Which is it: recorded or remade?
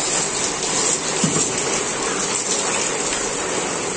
recorded